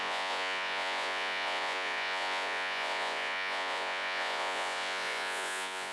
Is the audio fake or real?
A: fake